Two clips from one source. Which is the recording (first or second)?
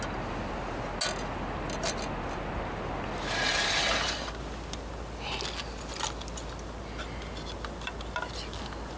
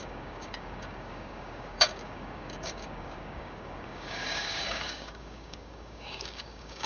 first